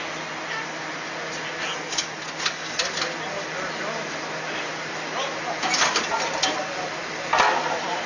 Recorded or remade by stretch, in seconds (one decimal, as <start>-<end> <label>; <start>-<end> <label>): 0.0-8.1 recorded